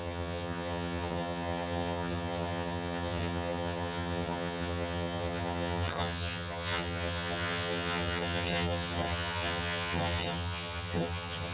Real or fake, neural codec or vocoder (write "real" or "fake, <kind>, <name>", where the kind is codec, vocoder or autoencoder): fake, vocoder, HiFi-GAN